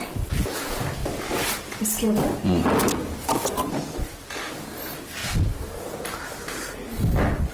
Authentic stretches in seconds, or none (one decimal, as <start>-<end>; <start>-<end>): 0.0-7.5